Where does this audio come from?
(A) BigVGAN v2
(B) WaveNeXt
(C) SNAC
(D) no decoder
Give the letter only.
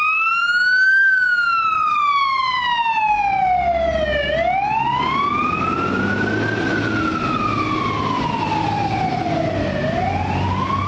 D